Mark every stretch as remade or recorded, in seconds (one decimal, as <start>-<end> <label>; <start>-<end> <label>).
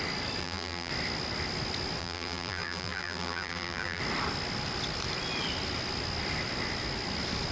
0.0-0.4 recorded; 0.4-0.9 remade; 0.9-2.0 recorded; 2.0-4.0 remade; 4.0-7.5 recorded